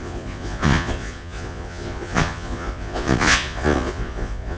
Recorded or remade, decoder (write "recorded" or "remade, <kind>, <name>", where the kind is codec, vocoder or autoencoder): remade, vocoder, Vocos